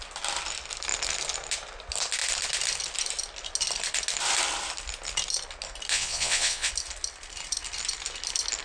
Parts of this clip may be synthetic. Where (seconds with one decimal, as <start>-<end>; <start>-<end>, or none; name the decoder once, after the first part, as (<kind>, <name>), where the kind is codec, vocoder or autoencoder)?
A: 5.9-6.7 (vocoder, WaveNeXt)